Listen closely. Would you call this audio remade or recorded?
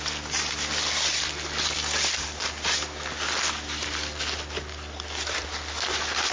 recorded